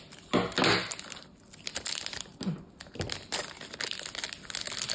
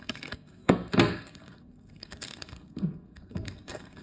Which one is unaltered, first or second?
first